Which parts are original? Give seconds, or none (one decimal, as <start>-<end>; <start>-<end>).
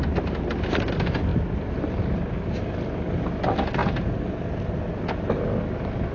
0.0-6.1